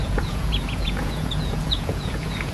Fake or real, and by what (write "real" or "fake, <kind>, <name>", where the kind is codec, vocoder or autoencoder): fake, vocoder, Vocos